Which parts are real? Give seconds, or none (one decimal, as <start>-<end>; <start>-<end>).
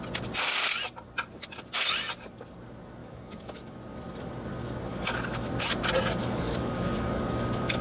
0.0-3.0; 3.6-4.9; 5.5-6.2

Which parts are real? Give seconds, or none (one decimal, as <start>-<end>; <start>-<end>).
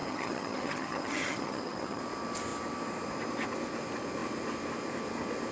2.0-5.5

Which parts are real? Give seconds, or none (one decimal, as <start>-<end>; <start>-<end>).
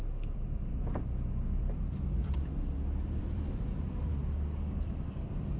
2.5-3.2; 4.1-4.7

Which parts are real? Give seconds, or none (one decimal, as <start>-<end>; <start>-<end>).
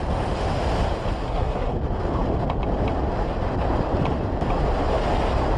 0.0-1.2; 1.7-5.6